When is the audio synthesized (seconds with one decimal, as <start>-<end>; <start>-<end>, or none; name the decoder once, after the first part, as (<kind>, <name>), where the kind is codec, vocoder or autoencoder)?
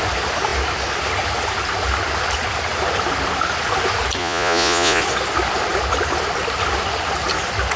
4.2-5.0 (vocoder, Vocos)